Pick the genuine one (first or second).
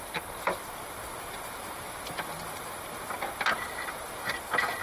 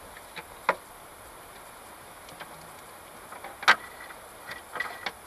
second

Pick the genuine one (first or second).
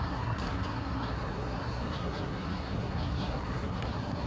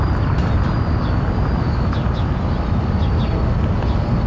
second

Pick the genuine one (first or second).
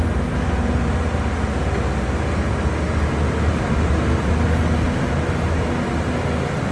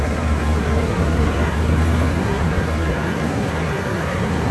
first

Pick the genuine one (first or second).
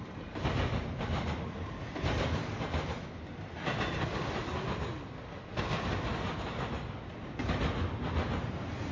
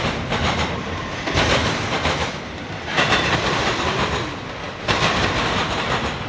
first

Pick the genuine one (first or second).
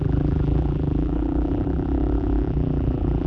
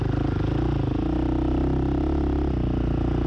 second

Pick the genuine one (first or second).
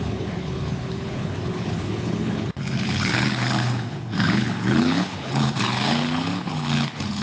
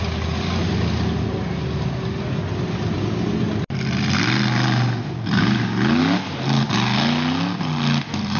second